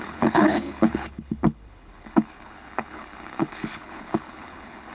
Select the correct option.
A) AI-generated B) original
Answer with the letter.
A